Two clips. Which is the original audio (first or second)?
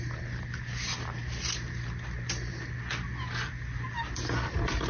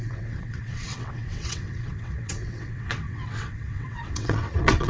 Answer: first